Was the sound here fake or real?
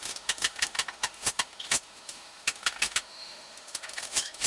fake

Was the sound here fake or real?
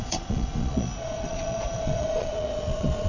fake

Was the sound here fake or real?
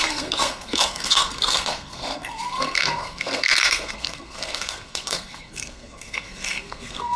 fake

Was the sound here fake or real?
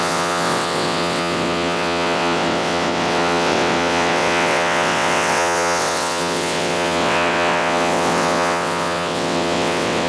fake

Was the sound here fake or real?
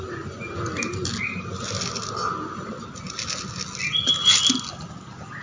real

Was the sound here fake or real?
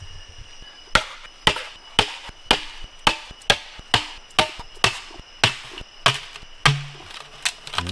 real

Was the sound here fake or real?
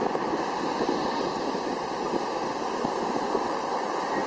real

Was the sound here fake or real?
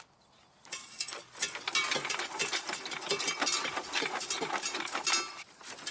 real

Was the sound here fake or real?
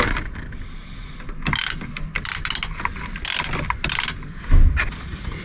real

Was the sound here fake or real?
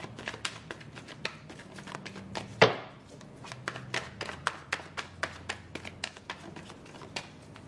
real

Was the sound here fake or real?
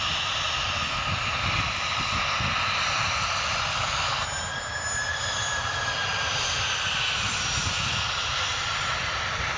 real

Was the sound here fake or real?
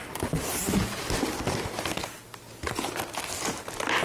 real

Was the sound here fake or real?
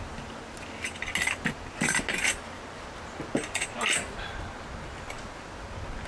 real